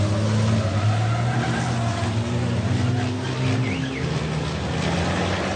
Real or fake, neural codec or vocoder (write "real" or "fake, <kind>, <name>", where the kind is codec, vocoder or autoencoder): real